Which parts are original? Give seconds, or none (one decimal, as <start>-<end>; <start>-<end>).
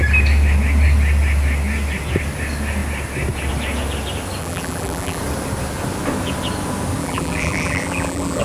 0.0-4.4; 5.2-7.0